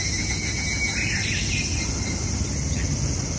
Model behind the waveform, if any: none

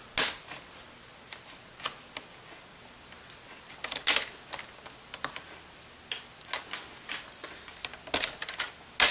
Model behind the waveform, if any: none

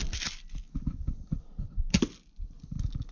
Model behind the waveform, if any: none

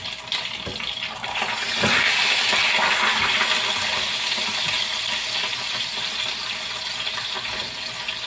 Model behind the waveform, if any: none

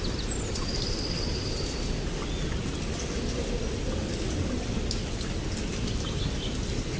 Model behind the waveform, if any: none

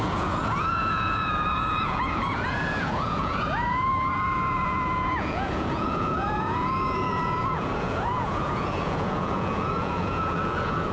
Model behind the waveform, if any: vocoder, Vocos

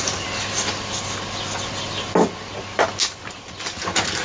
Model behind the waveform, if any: none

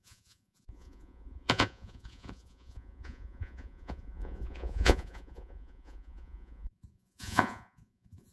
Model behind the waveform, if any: vocoder, Vocos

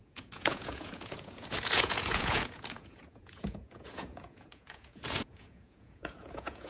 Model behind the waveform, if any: vocoder, Vocos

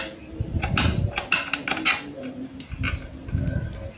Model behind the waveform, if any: none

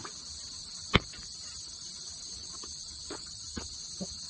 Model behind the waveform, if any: none